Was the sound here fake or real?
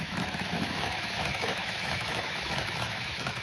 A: fake